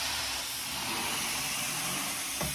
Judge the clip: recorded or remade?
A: recorded